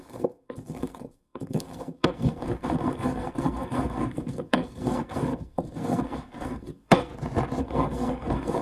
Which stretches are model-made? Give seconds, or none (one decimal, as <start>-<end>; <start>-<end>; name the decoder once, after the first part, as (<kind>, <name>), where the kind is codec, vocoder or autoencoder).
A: 0.0-7.1 (codec, SNAC); 7.6-8.6